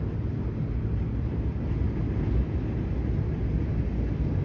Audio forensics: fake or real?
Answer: real